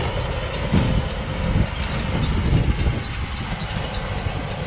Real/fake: real